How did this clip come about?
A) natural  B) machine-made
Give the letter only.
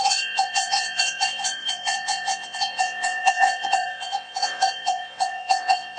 B